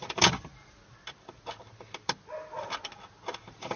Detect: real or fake real